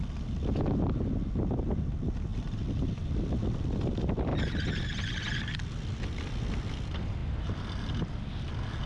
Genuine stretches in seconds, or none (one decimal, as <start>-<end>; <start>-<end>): 0.0-2.3; 3.3-7.2; 8.5-8.9